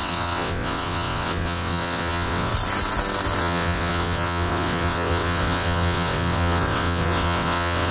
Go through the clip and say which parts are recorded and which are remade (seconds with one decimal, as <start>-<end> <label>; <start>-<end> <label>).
0.0-2.5 remade; 2.5-3.4 recorded; 3.4-7.9 remade